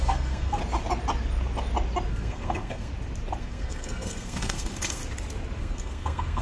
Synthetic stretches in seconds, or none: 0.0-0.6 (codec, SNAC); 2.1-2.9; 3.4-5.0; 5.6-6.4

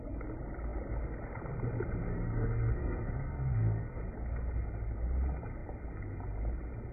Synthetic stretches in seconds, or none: 2.1-4.0 (codec, SNAC)

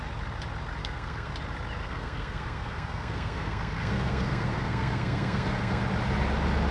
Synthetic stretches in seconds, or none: 0.8-1.3 (codec, SNAC); 1.8-5.8

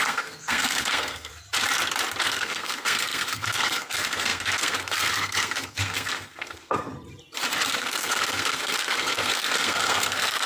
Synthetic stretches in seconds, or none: 0.0-1.3 (codec, SNAC); 2.2-6.9; 7.8-10.5

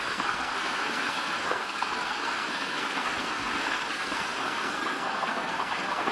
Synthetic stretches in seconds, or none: 0.0-6.1 (codec, SNAC)